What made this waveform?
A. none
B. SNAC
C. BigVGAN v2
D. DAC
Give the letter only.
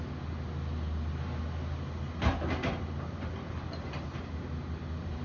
A